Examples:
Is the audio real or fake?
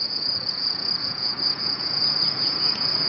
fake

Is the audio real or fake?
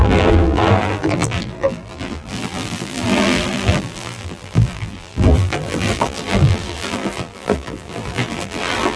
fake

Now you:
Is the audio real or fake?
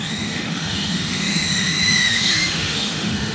fake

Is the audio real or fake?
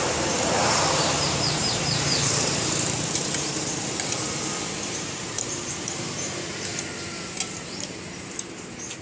fake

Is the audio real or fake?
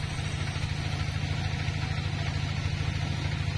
real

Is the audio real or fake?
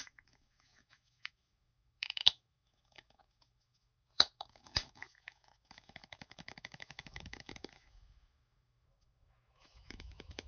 fake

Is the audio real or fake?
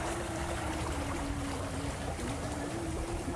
real